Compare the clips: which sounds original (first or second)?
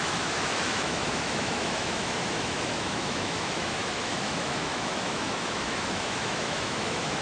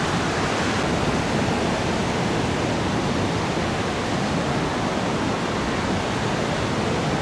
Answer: second